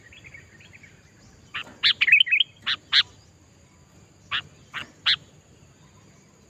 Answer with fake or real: real